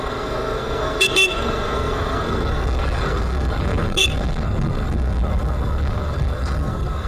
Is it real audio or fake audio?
fake